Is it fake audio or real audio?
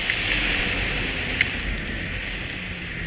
real